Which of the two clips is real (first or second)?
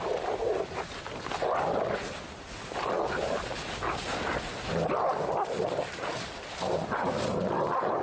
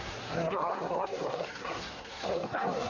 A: first